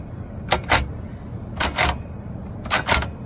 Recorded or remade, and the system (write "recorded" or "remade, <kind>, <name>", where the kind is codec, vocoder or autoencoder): recorded